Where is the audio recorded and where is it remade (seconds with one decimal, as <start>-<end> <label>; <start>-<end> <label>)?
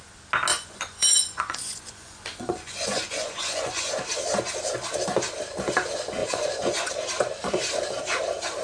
0.0-0.5 recorded; 0.5-3.9 remade; 3.9-6.2 recorded; 6.2-6.9 remade; 6.9-8.6 recorded